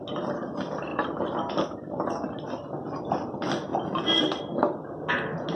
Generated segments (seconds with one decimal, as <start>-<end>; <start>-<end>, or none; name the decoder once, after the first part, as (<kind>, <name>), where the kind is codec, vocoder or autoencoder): none